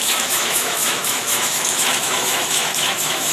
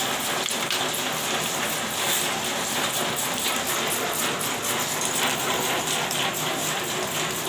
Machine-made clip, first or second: first